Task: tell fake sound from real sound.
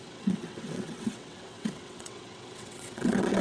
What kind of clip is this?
fake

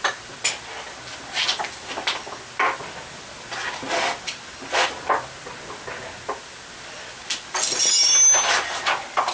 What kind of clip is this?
real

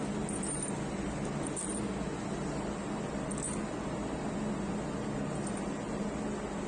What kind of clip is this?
real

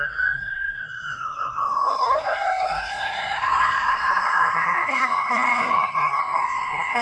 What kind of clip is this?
fake